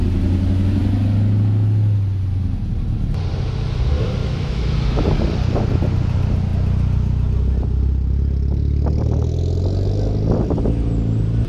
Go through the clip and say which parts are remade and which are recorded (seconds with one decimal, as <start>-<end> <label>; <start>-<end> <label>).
0.0-4.2 recorded; 4.2-4.7 remade; 4.7-11.5 recorded